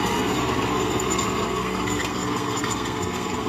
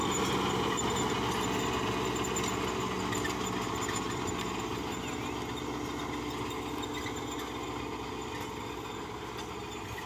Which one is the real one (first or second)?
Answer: second